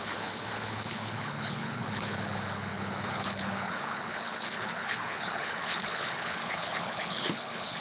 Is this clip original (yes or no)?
no